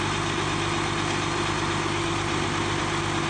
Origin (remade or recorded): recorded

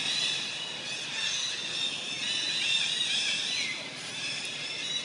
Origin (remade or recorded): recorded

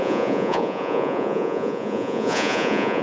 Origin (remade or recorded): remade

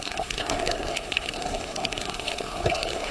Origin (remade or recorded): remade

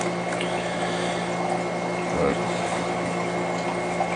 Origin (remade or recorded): recorded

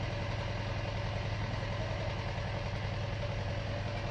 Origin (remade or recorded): recorded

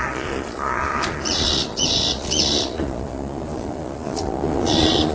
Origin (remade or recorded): remade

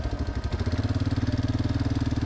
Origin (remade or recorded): recorded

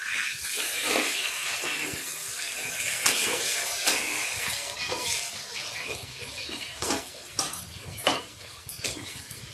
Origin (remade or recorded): remade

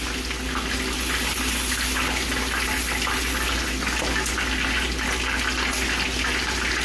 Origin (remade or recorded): recorded